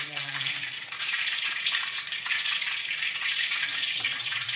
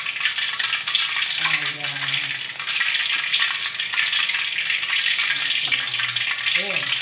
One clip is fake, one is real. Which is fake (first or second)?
first